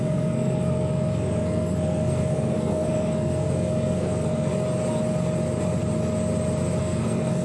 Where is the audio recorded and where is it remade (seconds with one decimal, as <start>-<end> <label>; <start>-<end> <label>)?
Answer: 0.0-4.5 remade; 4.5-6.8 recorded; 6.8-7.4 remade